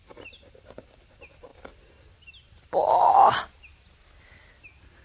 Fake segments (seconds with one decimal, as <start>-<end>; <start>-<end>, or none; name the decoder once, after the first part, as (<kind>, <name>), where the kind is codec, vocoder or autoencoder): none